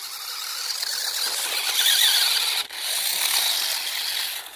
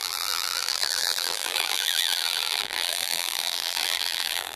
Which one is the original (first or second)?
first